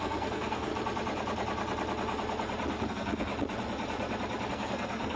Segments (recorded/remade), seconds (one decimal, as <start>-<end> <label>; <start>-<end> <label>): 0.0-0.7 remade; 0.7-2.9 recorded; 2.9-3.3 remade; 3.3-4.5 recorded; 4.5-5.2 remade